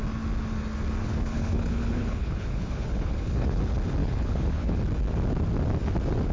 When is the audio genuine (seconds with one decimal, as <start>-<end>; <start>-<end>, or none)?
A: 0.0-1.0; 3.6-4.0; 4.8-6.3